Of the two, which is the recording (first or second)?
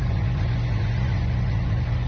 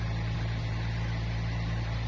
second